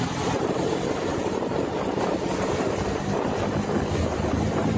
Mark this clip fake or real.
real